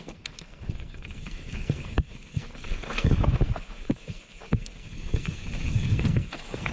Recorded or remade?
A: remade